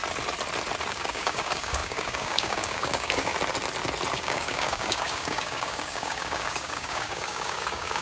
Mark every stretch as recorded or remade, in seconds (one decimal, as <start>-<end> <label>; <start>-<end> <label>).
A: 0.0-0.9 recorded; 0.9-3.3 remade; 3.3-4.1 recorded; 4.1-8.0 remade